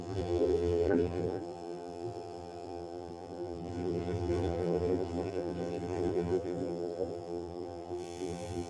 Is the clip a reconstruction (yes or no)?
yes